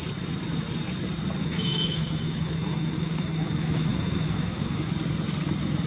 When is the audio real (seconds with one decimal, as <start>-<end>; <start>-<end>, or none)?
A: 0.0-1.4; 4.9-5.9